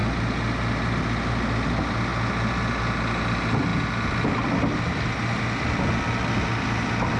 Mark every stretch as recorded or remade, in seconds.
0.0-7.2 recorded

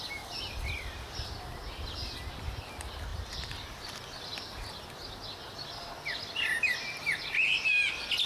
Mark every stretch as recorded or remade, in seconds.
0.0-3.1 recorded; 3.1-4.0 remade; 4.0-8.3 recorded

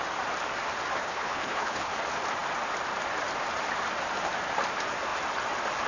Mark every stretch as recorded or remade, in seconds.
0.0-1.0 recorded; 1.0-1.9 remade; 1.9-5.9 recorded

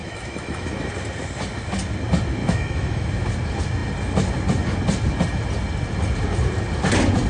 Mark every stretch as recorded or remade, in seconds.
0.0-0.9 remade; 0.9-2.4 recorded; 2.4-3.1 remade; 3.1-7.3 recorded